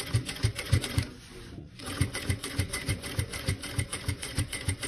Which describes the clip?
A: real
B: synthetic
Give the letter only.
B